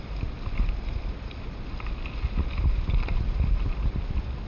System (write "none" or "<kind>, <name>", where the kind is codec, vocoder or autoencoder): none